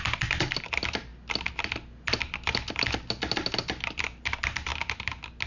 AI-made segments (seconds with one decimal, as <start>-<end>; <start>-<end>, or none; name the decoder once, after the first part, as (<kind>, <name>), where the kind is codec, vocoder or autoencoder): none